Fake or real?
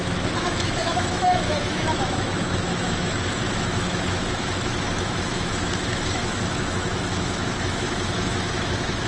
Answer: fake